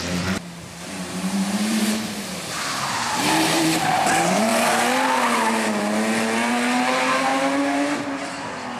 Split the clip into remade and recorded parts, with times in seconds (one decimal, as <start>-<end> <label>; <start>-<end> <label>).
0.0-4.5 remade; 4.5-6.5 recorded; 6.5-7.3 remade; 7.3-8.1 recorded; 8.1-8.8 remade

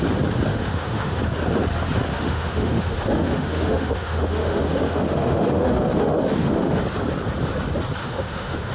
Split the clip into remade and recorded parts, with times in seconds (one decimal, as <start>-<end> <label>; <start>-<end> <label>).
0.0-0.5 recorded; 0.5-1.2 remade; 1.2-2.1 recorded; 2.1-6.8 remade; 6.8-8.0 recorded; 8.0-8.7 remade

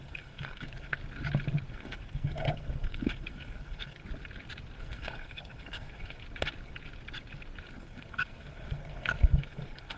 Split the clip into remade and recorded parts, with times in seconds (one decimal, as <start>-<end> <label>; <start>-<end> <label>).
0.0-1.0 remade; 1.0-1.7 recorded; 1.7-4.0 remade; 4.0-4.8 recorded; 4.8-6.2 remade; 6.2-7.8 recorded; 7.8-10.0 remade

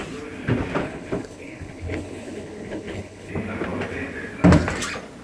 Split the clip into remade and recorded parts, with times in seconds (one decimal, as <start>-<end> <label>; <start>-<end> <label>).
0.0-0.8 recorded; 0.8-3.3 remade; 3.3-5.2 recorded

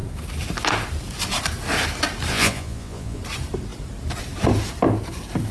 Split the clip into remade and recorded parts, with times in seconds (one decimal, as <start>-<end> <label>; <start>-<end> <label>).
0.0-2.3 recorded; 2.3-3.2 remade; 3.2-5.5 recorded

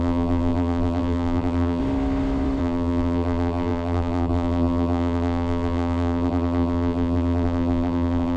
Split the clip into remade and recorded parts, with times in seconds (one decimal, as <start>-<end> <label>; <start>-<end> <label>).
0.0-1.8 remade; 1.8-2.6 recorded; 2.6-8.4 remade

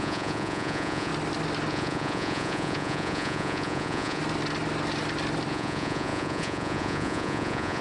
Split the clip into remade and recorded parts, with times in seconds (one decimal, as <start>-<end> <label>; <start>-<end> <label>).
0.0-1.1 remade; 1.1-1.7 recorded; 1.7-4.2 remade; 4.2-5.5 recorded; 5.5-7.8 remade

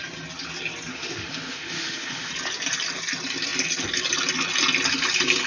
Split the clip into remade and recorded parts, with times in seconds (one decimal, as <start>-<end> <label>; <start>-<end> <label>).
0.0-0.9 recorded; 0.9-2.3 remade; 2.3-5.5 recorded